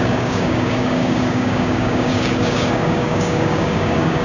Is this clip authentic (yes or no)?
no